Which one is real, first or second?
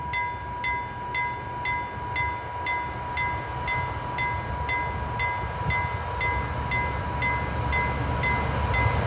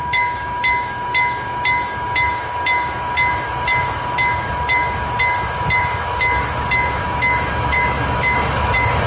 first